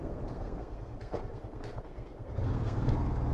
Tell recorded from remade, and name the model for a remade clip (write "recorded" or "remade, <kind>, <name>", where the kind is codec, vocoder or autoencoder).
remade, codec, SNAC